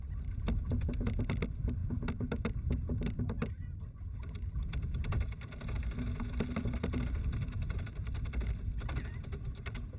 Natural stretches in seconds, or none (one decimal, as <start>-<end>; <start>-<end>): 0.0-10.0